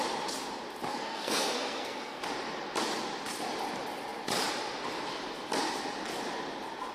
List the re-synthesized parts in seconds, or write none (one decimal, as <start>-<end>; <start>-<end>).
0.9-2.2